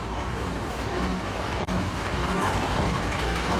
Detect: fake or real fake